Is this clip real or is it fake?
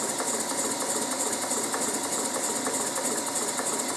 real